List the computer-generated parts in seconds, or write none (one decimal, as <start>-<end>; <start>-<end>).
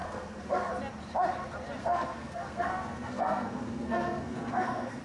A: 0.0-0.7; 1.8-5.0